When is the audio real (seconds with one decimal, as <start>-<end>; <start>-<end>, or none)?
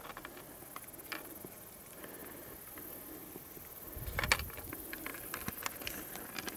0.0-6.6